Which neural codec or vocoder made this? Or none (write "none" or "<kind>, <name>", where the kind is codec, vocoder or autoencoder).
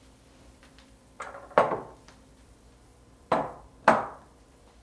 vocoder, BigVGAN v2